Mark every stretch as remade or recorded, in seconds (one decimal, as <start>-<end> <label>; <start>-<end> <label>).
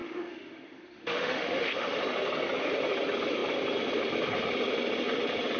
0.0-2.0 remade; 2.0-5.6 recorded